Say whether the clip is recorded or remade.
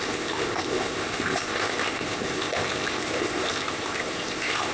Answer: remade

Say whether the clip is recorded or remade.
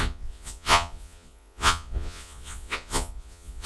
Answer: remade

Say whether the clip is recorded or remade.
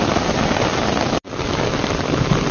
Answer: recorded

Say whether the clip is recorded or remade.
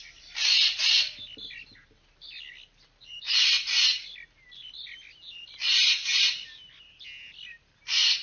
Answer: recorded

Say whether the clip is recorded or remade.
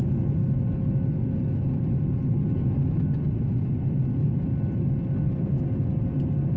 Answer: recorded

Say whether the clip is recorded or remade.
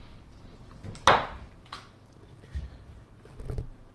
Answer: recorded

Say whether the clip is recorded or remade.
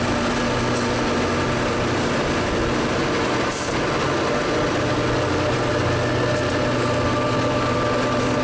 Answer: recorded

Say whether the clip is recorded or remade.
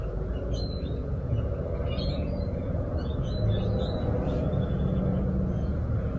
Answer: remade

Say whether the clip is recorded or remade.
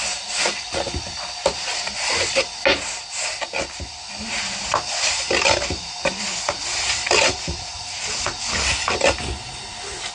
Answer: recorded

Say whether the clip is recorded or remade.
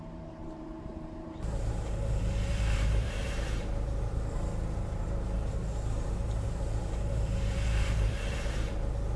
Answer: remade